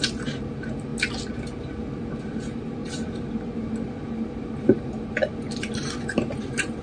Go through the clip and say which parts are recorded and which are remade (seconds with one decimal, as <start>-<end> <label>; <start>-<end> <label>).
0.0-0.9 remade; 0.9-2.2 recorded; 2.2-6.8 remade